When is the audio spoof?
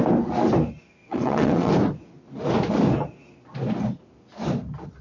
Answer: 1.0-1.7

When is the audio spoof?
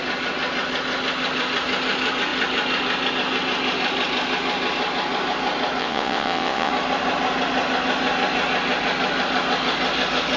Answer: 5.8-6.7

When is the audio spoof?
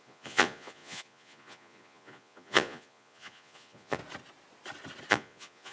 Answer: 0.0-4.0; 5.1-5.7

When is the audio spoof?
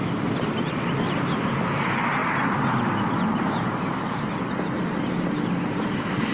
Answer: none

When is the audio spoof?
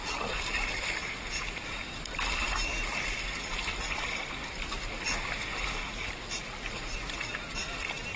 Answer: 1.0-1.9